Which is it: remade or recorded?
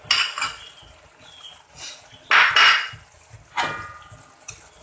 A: recorded